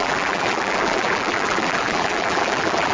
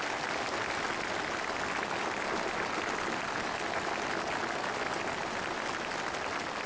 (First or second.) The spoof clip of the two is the first